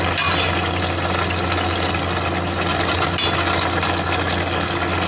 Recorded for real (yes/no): yes